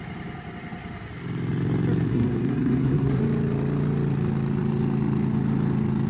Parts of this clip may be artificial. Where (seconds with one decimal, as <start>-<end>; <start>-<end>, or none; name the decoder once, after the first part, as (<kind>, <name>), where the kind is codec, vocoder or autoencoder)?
2.1-3.2 (codec, SNAC)